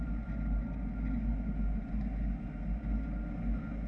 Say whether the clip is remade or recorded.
recorded